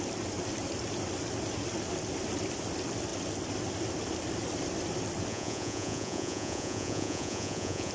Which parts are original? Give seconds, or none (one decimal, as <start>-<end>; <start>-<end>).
0.0-5.3

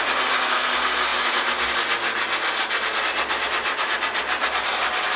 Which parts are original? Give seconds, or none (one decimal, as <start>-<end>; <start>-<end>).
0.0-5.2

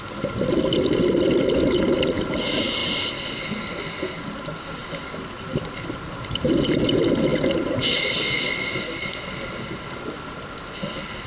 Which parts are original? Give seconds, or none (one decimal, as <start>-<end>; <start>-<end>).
0.0-11.3

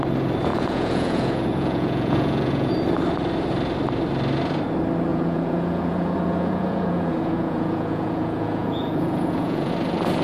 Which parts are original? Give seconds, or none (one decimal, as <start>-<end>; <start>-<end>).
0.0-0.5; 2.7-5.1; 9.7-10.2

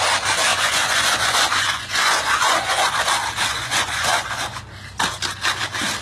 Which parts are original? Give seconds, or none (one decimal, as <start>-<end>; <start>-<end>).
0.0-0.5; 2.9-3.5; 4.6-6.0

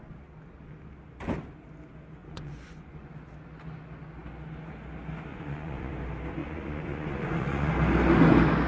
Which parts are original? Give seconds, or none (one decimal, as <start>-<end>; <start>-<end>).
0.0-2.2; 3.1-5.3; 5.9-6.4; 7.7-8.7

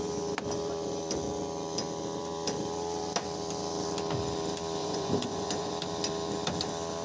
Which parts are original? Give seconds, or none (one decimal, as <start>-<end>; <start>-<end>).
0.0-4.8; 5.7-7.0

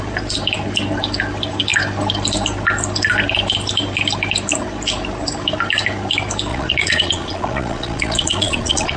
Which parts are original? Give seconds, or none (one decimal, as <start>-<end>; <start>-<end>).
0.0-6.5